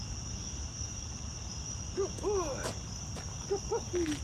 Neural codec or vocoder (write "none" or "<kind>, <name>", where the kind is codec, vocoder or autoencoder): none